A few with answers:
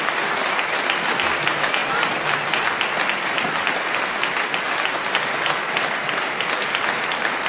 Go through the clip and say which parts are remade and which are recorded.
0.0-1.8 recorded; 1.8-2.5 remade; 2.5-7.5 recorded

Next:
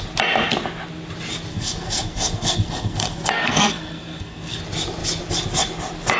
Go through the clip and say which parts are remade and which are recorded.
0.0-1.5 recorded; 1.5-4.6 remade; 4.6-6.2 recorded

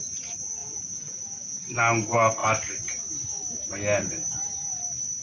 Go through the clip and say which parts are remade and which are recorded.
0.0-0.6 recorded; 0.6-1.6 remade; 1.6-5.2 recorded

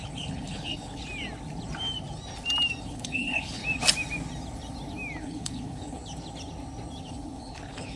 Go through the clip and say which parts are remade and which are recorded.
0.0-1.0 remade; 1.0-2.8 recorded; 2.8-3.6 remade; 3.6-5.2 recorded; 5.2-6.0 remade; 6.0-7.0 recorded; 7.0-8.0 remade